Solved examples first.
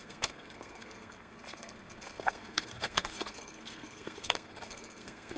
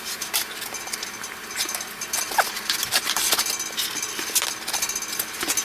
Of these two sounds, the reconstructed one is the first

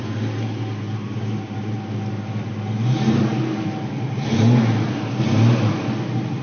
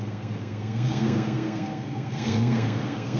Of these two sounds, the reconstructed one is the second